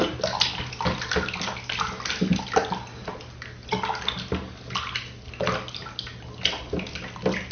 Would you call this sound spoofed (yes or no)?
no